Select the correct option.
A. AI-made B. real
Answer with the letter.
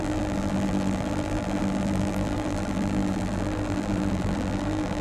A